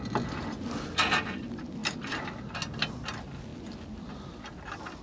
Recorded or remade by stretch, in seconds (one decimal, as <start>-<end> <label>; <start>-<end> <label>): 0.0-5.0 recorded

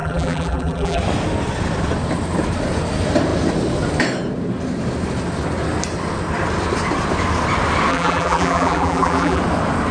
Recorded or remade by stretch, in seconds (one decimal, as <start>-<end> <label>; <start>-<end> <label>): 0.0-1.0 remade; 1.0-7.9 recorded; 7.9-9.4 remade; 9.4-9.9 recorded

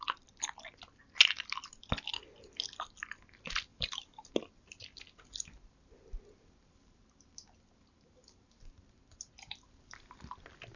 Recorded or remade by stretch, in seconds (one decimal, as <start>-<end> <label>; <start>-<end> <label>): 0.0-3.7 recorded; 3.7-4.2 remade; 4.2-10.8 recorded

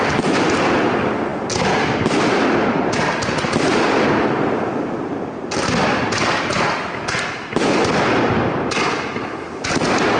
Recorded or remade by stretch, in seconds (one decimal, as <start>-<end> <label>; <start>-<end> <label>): 0.0-10.2 recorded

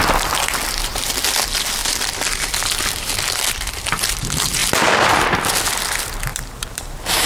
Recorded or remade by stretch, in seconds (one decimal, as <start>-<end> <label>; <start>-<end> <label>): 0.0-7.3 recorded

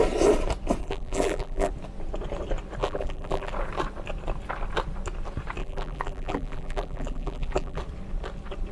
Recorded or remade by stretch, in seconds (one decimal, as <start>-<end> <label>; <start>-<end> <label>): 0.0-0.8 recorded; 0.8-1.7 remade; 1.7-2.8 recorded; 2.8-3.5 remade; 3.5-5.6 recorded; 5.6-7.8 remade; 7.8-8.7 recorded